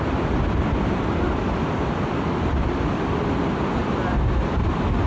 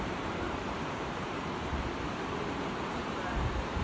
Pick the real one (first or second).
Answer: first